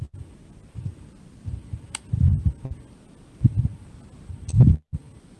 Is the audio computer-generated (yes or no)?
no